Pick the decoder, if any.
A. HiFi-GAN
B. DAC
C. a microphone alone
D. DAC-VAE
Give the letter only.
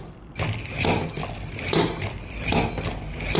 C